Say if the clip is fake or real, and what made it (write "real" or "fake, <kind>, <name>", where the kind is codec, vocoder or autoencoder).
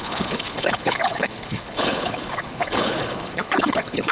fake, codec, HILCodec